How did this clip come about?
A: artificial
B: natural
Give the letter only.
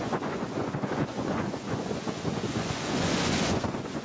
A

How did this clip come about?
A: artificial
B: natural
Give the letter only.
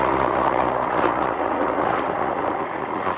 A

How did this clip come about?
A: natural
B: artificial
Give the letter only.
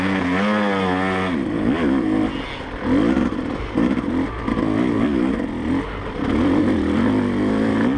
A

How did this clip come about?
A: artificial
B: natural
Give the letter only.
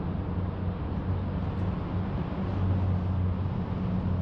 B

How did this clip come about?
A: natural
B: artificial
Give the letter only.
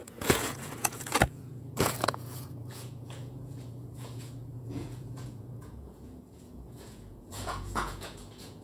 B